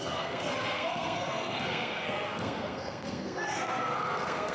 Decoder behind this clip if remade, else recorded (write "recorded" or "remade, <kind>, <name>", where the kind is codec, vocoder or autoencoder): remade, codec, SNAC